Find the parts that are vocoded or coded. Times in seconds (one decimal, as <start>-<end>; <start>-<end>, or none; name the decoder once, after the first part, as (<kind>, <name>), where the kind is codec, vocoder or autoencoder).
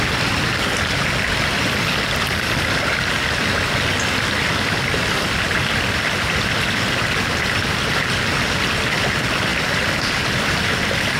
none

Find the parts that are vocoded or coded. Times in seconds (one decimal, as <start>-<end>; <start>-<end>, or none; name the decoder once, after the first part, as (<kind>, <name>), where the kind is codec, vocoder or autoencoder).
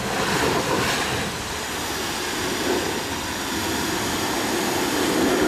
none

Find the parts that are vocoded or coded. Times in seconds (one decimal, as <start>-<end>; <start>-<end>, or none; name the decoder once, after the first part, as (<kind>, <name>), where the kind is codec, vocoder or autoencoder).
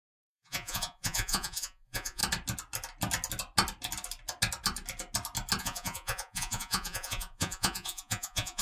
0.0-2.2 (vocoder, Vocos); 5.6-8.6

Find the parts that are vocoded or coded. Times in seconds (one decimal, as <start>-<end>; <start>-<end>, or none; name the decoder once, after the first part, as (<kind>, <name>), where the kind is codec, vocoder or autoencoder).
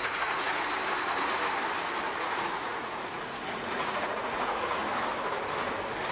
0.0-0.5 (vocoder, Vocos); 2.2-4.8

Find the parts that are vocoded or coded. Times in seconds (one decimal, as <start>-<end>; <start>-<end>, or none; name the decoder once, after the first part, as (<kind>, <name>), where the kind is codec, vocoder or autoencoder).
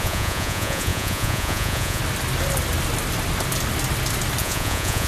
0.0-2.0 (vocoder, Vocos); 4.4-5.1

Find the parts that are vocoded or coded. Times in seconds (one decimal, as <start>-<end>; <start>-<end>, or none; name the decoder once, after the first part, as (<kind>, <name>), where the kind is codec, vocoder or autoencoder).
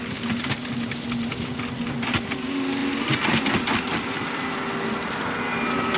none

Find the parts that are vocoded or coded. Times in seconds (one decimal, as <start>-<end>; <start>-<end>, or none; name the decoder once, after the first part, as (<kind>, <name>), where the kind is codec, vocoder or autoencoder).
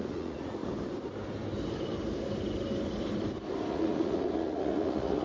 0.0-0.6 (vocoder, Vocos); 3.7-5.2